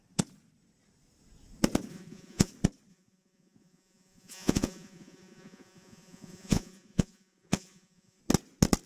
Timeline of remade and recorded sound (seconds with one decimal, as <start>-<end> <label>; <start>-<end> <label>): 0.0-1.9 recorded; 1.9-2.5 remade; 2.5-2.9 recorded; 2.9-8.2 remade; 8.2-8.9 recorded